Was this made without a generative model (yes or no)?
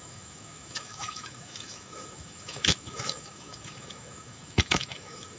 no